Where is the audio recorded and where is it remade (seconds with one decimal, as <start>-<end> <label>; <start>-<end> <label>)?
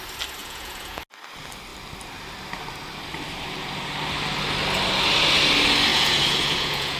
0.0-0.4 recorded; 0.4-1.0 remade; 1.0-5.9 recorded; 5.9-7.0 remade